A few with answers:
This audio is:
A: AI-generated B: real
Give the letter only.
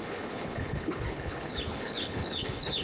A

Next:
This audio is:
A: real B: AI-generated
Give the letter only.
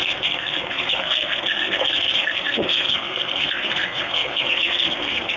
B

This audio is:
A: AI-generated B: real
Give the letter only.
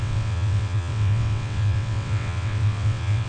A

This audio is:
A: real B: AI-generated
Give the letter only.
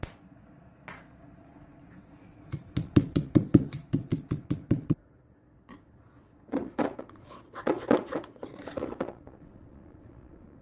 B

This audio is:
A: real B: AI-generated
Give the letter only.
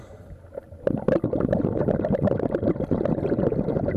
A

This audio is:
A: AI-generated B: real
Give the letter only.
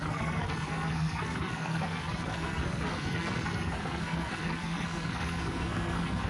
A